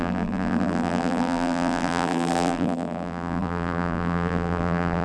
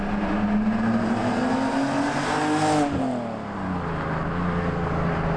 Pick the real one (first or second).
second